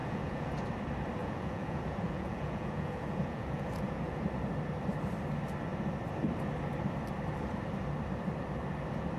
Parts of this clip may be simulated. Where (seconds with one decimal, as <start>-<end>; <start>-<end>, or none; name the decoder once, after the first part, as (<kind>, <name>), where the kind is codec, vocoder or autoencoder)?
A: 0.0-0.5 (vocoder, Vocos); 1.2-4.2